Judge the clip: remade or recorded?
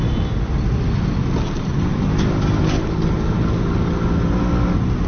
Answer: recorded